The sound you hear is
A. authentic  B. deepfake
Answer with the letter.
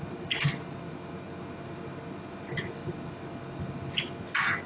A